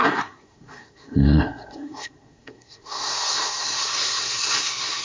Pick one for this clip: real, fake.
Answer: fake